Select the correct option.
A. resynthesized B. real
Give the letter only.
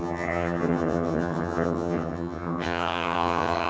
A